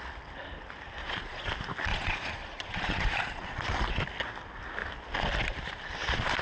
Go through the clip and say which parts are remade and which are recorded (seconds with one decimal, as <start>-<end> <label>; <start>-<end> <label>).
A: 0.0-1.0 recorded; 1.0-1.5 remade; 1.5-1.9 recorded; 1.9-3.7 remade; 3.7-6.4 recorded